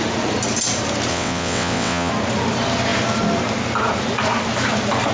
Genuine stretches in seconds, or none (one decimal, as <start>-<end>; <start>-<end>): 0.0-1.1; 2.1-5.1